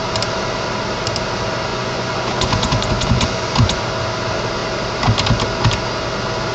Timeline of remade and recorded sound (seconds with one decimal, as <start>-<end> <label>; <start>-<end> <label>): 0.0-1.7 recorded; 1.7-3.8 remade; 3.8-6.5 recorded